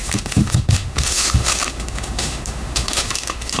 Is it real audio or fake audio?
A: fake